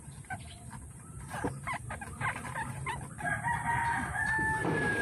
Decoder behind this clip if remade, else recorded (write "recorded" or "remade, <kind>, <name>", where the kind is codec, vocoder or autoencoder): recorded